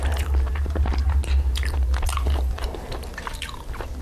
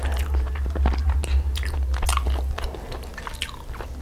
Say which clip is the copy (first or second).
first